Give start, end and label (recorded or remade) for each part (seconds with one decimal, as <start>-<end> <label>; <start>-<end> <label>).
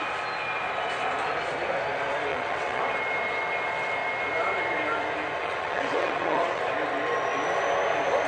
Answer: 0.0-2.3 recorded; 2.3-2.8 remade; 2.8-5.4 recorded; 5.4-6.6 remade; 6.6-8.3 recorded